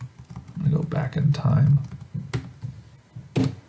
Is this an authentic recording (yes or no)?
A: yes